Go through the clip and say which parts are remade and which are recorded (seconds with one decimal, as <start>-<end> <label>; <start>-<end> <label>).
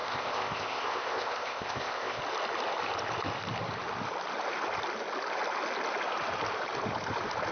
0.0-2.2 remade; 2.2-7.5 recorded